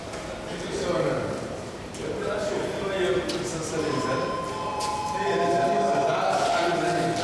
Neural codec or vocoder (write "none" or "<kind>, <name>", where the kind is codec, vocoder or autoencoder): none